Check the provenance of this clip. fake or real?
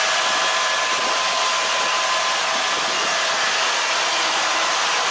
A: real